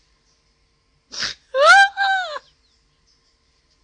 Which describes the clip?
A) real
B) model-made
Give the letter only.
A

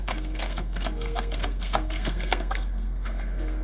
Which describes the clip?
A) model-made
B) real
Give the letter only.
A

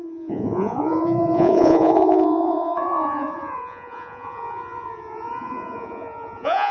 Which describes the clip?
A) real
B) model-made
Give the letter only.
B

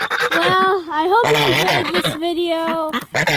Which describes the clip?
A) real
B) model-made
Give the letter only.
A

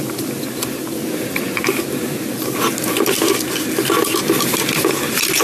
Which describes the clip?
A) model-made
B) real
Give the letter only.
B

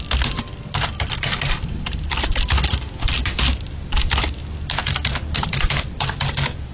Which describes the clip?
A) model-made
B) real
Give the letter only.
A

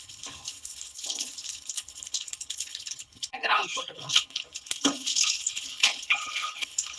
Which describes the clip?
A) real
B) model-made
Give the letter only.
B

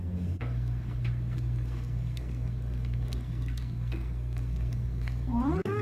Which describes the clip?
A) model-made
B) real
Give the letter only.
A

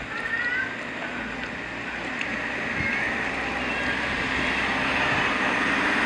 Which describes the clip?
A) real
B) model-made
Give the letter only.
A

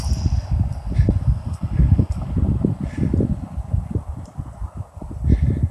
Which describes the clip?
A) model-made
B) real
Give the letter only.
B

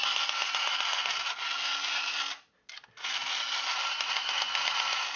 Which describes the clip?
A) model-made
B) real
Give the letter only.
B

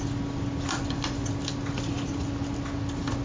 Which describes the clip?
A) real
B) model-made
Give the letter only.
A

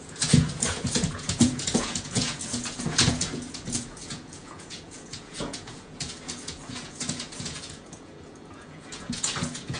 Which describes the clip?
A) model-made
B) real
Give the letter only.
A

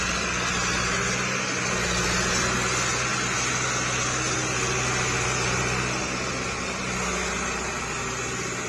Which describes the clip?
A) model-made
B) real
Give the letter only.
B